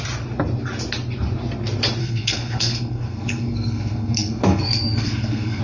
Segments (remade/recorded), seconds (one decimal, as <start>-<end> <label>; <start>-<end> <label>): 0.0-2.0 recorded; 2.0-5.6 remade